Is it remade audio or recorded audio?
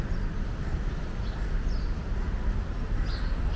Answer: recorded